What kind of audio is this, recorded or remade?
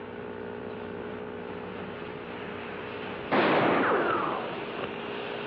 remade